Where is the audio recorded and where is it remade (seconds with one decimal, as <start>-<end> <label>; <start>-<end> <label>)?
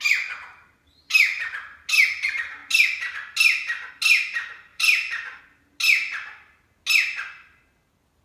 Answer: 0.0-4.7 recorded; 4.7-5.4 remade; 5.4-8.2 recorded